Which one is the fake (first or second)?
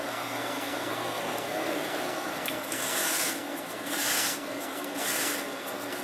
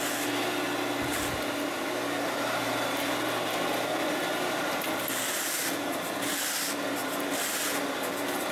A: first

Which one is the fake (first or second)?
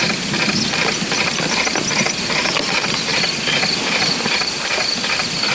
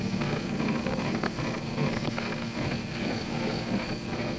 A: second